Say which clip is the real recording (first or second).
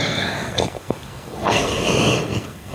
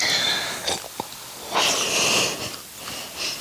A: second